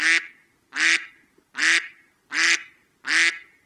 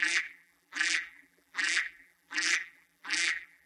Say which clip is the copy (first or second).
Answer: second